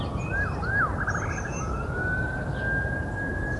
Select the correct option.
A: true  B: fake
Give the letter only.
A